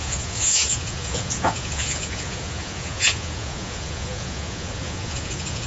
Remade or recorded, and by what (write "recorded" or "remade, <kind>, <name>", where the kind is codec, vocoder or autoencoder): remade, vocoder, Vocos